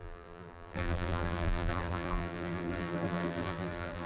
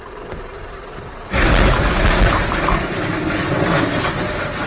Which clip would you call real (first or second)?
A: second